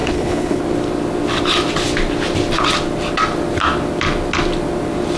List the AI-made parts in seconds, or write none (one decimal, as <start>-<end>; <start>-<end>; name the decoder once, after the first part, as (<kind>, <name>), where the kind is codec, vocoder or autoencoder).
0.0-0.6 (codec, HILCodec)